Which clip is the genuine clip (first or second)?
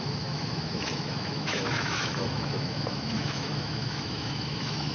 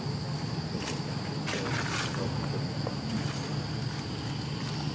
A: second